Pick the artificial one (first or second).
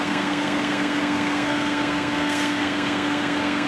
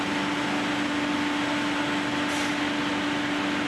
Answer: first